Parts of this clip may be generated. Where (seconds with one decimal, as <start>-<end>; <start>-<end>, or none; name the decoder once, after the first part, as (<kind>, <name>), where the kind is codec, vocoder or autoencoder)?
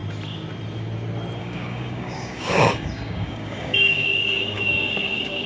1.4-5.5 (codec, DAC)